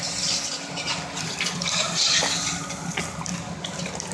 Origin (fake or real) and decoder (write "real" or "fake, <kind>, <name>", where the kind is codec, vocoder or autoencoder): real